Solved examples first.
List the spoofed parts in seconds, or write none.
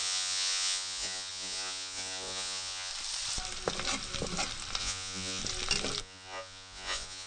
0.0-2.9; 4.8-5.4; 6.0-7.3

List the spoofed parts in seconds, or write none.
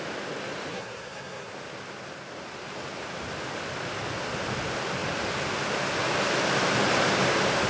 0.7-1.5